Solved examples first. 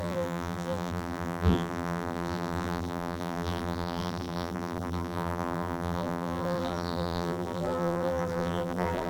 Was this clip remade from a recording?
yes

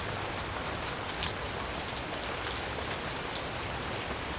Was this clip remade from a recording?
no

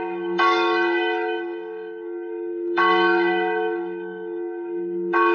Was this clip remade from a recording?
yes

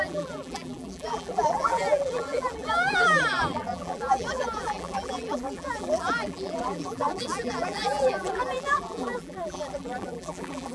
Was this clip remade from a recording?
yes